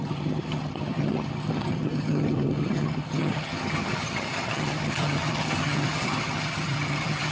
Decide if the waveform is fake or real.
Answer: fake